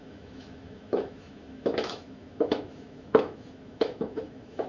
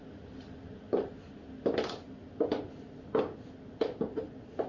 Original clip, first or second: second